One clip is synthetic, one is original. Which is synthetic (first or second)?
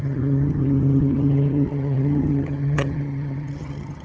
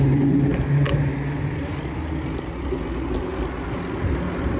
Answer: first